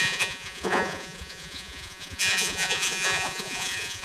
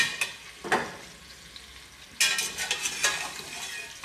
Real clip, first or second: second